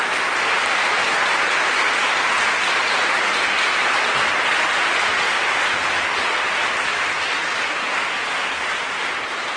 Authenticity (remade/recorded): recorded